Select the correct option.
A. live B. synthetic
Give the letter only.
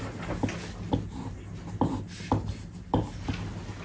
A